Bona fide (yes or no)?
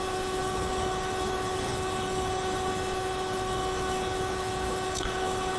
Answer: no